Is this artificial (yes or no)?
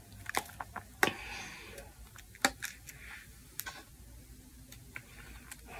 no